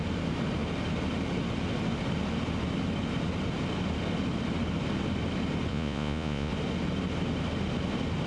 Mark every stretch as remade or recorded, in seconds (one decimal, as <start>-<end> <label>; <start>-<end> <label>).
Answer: 0.0-5.7 recorded; 5.7-6.5 remade; 6.5-8.3 recorded